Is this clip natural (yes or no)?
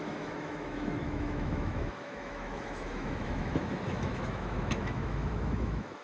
no